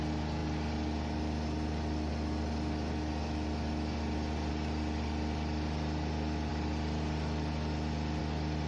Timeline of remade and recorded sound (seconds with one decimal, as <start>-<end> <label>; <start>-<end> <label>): 0.0-8.7 recorded